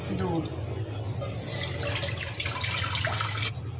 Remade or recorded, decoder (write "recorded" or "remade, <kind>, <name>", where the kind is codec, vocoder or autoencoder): recorded